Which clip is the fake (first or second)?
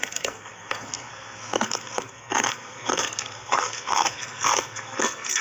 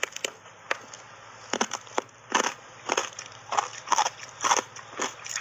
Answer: first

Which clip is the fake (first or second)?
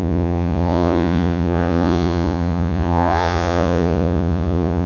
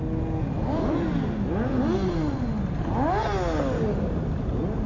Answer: first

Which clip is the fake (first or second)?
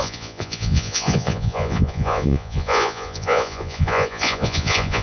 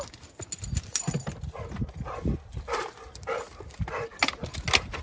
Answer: first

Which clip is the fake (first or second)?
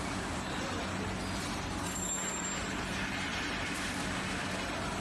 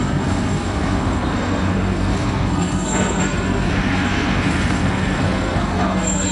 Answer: second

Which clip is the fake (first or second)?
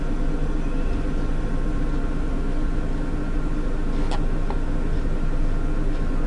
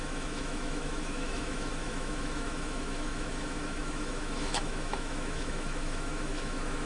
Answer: second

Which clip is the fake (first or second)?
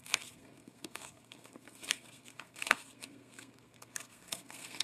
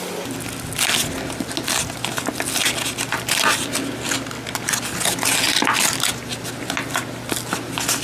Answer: first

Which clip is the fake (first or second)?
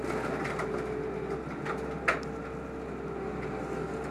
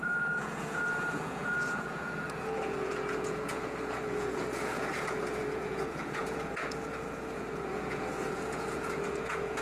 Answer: second